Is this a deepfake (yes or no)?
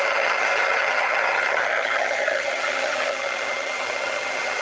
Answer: yes